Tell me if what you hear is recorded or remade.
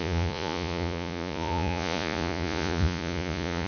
remade